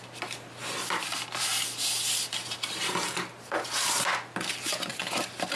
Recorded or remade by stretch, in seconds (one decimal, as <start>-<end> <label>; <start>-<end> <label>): 0.0-5.6 recorded